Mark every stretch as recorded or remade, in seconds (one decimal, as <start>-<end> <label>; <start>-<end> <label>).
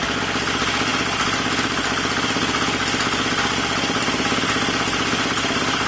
0.0-5.9 recorded